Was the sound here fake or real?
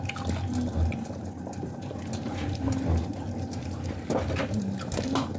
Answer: real